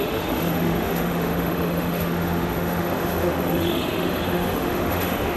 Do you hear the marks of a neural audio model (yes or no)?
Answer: yes